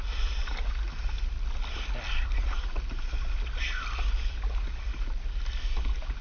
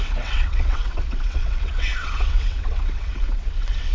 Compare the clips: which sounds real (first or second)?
first